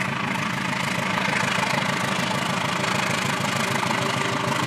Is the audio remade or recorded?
recorded